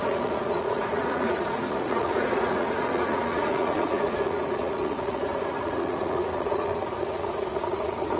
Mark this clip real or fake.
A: fake